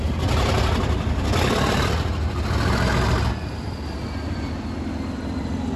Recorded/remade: recorded